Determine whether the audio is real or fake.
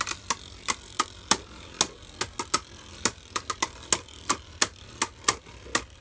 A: real